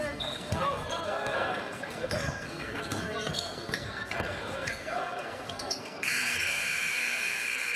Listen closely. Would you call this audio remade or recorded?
remade